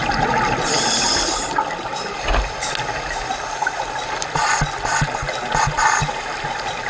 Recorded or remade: recorded